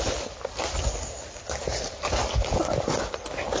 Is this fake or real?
real